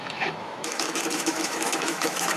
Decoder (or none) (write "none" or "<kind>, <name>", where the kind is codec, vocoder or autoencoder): autoencoder, DAC-VAE